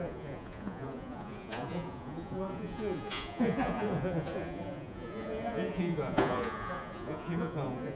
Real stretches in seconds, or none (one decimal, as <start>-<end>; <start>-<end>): none

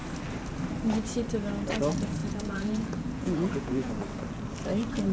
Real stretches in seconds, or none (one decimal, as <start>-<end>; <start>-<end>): 0.0-2.2; 3.9-5.1

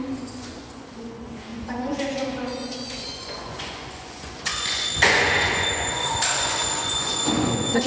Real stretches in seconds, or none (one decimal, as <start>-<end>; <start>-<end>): none